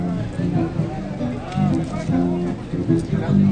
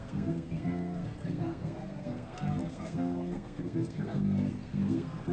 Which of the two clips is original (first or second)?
first